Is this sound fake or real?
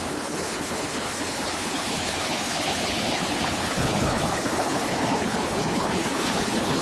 fake